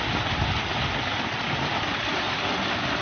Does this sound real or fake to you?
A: real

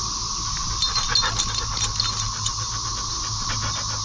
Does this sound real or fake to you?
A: real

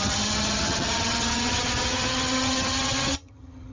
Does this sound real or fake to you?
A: fake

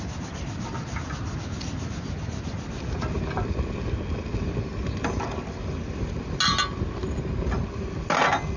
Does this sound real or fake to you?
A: real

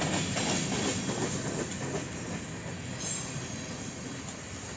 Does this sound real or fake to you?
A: real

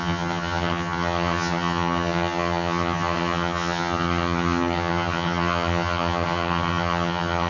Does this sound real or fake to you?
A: fake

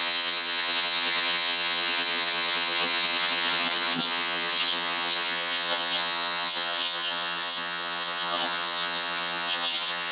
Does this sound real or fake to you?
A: fake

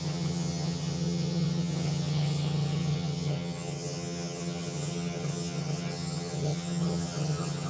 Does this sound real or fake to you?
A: fake